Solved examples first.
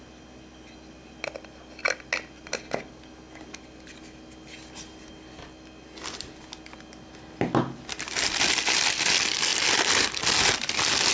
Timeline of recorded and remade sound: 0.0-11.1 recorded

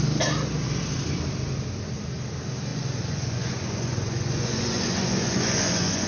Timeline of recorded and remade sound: 0.0-2.7 recorded; 2.7-6.1 remade

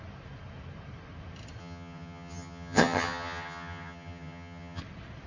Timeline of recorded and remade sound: 0.0-1.6 recorded; 1.6-4.8 remade; 4.8-5.3 recorded

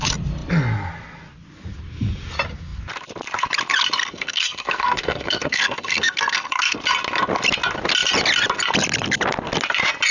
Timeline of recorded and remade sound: 0.0-4.0 recorded; 4.0-6.8 remade; 6.8-10.1 recorded

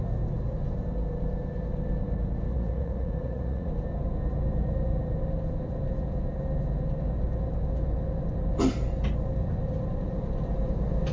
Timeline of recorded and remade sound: 0.0-2.5 recorded; 2.5-3.7 remade; 3.7-11.1 recorded

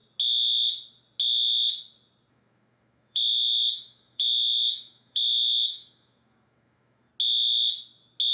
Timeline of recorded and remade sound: 0.0-2.3 recorded; 2.3-7.1 remade; 7.1-8.3 recorded